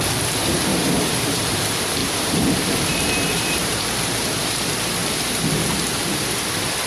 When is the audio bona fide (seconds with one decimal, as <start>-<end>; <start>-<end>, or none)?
0.0-0.7; 1.6-2.0; 4.0-6.9